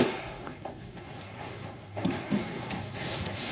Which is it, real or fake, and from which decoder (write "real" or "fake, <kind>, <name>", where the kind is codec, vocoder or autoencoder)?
fake, codec, SNAC